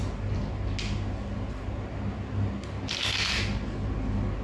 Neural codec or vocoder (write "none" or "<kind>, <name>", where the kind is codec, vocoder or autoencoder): none